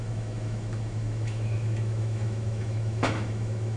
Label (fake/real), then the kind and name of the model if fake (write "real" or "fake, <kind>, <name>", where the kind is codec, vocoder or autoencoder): fake, autoencoder, DAC-VAE